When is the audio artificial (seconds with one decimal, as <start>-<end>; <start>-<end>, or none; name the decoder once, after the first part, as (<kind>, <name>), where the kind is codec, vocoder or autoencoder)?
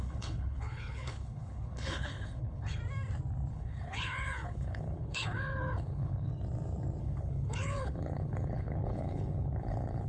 0.0-2.8 (codec, HILCodec); 3.5-6.3; 7.0-10.1